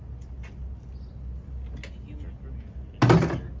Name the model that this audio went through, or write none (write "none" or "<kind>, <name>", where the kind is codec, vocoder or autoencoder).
none